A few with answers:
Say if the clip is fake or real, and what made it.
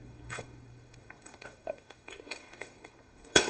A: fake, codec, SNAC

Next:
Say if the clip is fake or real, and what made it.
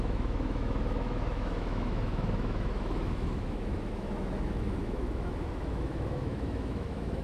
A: fake, autoencoder, DAC-VAE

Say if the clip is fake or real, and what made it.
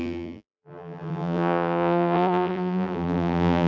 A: fake, vocoder, BigVGAN v2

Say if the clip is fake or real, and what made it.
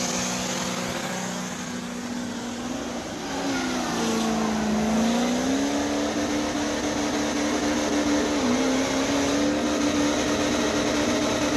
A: real